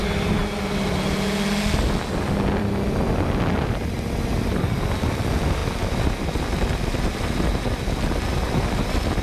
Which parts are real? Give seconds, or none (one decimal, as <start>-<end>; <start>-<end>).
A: 0.0-9.2